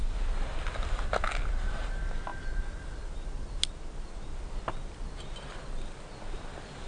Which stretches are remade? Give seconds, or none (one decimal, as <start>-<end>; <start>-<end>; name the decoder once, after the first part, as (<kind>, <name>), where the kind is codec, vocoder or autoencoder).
none